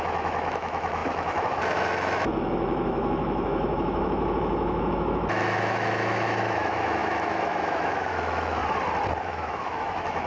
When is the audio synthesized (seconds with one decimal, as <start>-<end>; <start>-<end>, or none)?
0.0-8.6; 9.2-10.3